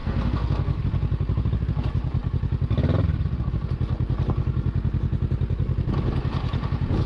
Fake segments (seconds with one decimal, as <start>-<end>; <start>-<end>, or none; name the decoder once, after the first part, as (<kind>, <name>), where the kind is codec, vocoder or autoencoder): 0.0-0.8 (codec, SNAC)